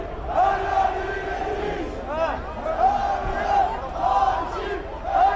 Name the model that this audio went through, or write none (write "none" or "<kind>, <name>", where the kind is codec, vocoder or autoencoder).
none